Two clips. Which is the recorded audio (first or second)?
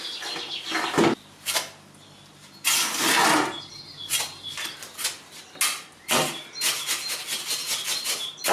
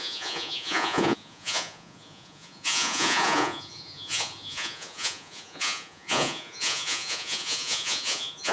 first